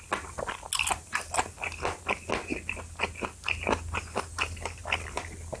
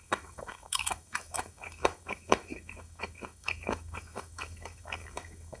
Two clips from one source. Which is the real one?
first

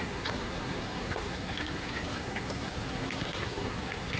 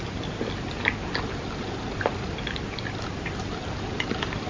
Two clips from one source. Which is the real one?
second